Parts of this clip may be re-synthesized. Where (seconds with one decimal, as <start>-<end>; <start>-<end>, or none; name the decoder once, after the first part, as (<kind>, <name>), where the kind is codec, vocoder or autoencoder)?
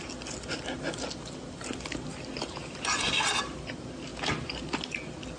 2.1-3.6 (vocoder, BigVGAN v2)